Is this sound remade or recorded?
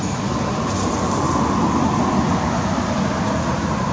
recorded